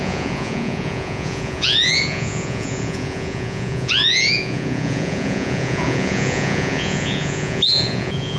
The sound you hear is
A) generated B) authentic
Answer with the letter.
A